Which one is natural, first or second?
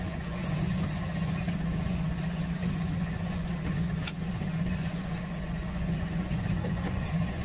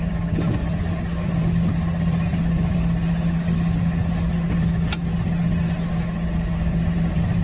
second